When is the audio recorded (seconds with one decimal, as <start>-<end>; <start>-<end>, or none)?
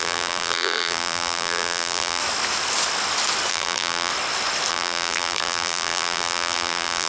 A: 2.2-3.5; 4.1-4.7